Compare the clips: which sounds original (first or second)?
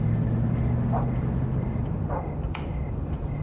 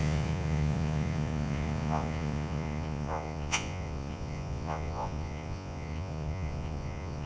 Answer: first